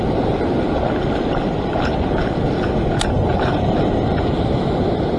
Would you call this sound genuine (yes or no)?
yes